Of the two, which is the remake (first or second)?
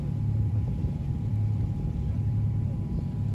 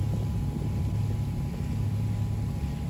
first